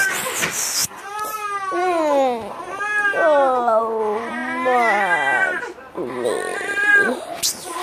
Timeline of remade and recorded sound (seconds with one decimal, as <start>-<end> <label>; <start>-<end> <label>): 0.0-7.8 recorded